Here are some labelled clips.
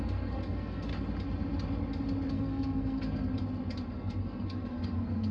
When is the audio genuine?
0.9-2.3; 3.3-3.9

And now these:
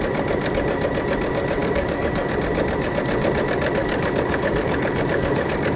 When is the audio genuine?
0.0-1.6; 2.4-3.8

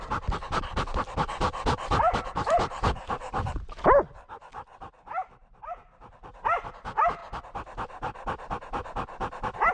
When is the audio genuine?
0.0-0.4; 3.3-5.3; 6.1-9.7

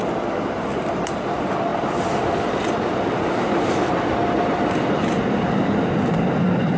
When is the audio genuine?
0.0-6.8